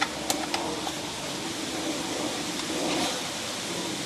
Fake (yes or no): no